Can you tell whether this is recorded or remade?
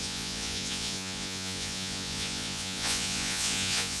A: remade